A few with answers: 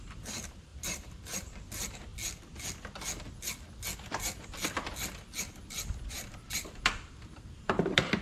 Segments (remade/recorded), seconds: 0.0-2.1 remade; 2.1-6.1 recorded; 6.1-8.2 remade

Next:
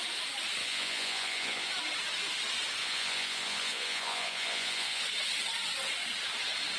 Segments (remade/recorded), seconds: 0.0-0.6 recorded; 0.6-1.7 remade; 1.7-2.8 recorded; 2.8-5.0 remade; 5.0-6.8 recorded

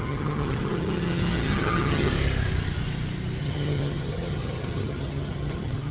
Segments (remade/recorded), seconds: 0.0-2.1 remade; 2.1-3.4 recorded; 3.4-5.9 remade